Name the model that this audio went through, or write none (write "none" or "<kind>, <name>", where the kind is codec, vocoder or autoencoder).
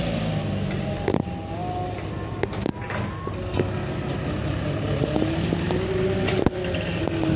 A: none